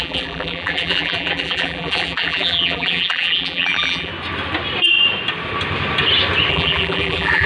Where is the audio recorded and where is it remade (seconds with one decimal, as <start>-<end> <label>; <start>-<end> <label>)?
0.0-4.1 remade; 4.1-6.5 recorded; 6.5-7.5 remade